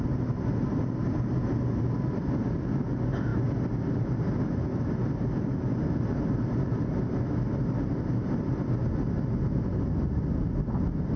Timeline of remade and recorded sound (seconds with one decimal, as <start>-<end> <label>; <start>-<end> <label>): 0.0-3.3 recorded; 3.3-4.4 remade; 4.4-11.2 recorded